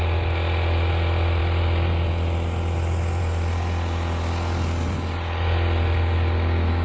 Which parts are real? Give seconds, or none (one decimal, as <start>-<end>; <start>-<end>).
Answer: 0.0-6.8